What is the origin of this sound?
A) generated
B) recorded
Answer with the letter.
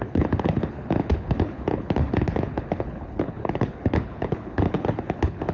A